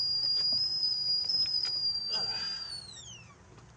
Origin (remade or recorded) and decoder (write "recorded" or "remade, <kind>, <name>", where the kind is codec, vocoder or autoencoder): recorded